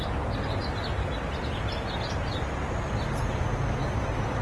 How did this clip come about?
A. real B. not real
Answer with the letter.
A